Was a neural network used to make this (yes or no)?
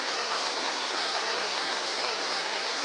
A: yes